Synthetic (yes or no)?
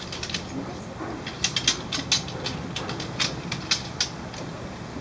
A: no